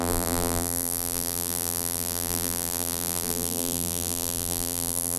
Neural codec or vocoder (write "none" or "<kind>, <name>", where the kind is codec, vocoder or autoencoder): vocoder, BigVGAN v2